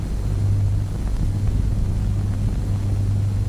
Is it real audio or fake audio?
real